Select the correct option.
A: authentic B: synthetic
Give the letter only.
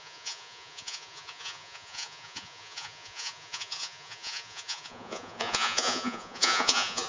B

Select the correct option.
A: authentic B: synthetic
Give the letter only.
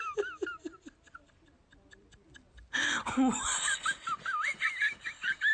A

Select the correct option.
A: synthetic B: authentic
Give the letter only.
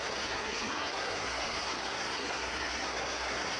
A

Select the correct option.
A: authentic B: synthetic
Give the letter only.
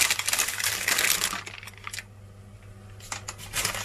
A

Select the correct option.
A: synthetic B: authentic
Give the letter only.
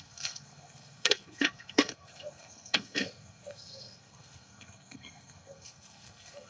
A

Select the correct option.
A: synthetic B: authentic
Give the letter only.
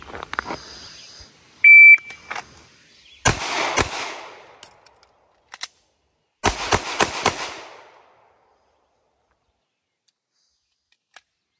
B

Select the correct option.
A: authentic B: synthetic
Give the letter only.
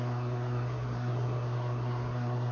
B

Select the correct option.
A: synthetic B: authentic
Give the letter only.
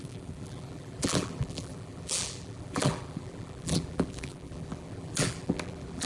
A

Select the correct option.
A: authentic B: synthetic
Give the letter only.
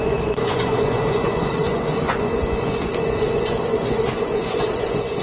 B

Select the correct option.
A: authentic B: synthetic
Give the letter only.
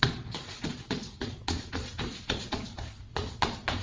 B